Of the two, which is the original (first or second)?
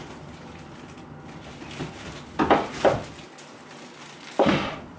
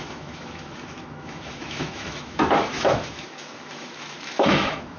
first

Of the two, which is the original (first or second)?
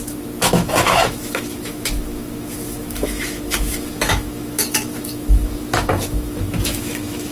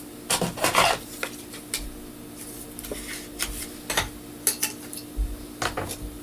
second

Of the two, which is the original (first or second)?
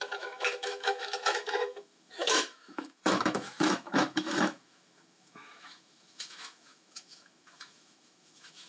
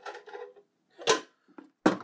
second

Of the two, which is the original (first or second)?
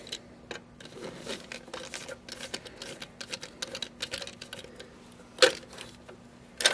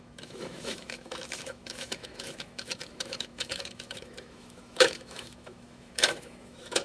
first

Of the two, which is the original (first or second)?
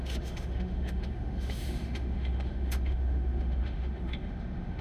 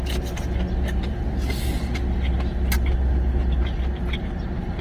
second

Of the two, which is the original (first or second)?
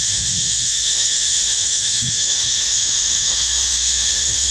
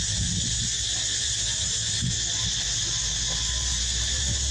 second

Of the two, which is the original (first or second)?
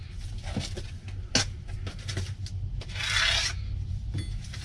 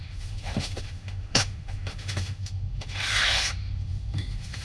first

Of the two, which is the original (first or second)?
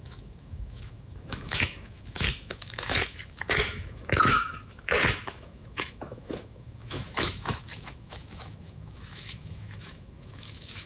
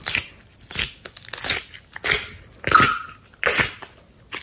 second